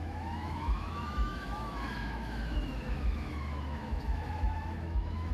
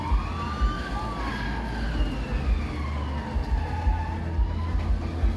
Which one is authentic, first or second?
second